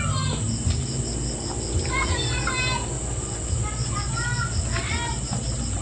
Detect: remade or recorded recorded